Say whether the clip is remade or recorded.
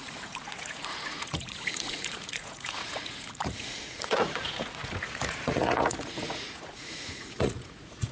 remade